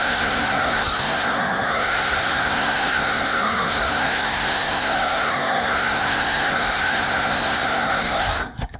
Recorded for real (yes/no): no